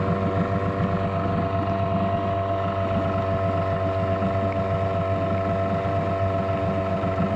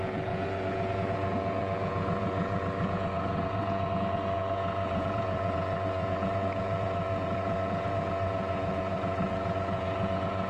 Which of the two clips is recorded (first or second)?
first